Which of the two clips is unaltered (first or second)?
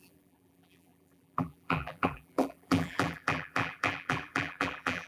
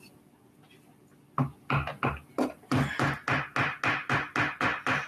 second